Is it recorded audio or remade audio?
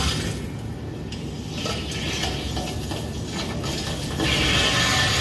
recorded